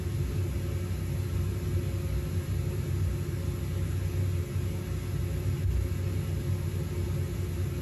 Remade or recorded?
recorded